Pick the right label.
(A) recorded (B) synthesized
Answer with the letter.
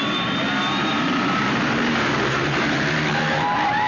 B